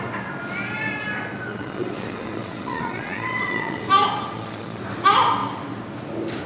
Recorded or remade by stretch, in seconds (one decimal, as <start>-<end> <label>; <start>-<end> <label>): 0.0-1.5 recorded; 1.5-3.8 remade; 3.8-4.3 recorded; 4.3-4.8 remade; 4.8-6.5 recorded